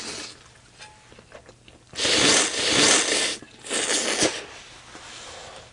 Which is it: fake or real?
real